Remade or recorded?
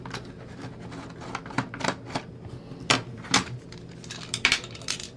recorded